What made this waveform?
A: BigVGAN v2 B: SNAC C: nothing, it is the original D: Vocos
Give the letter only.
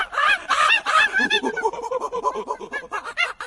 D